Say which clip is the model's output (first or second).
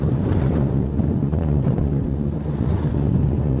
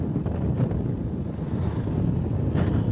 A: first